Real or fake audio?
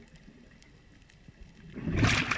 fake